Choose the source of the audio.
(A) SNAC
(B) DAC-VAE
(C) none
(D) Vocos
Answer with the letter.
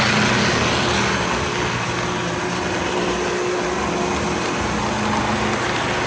C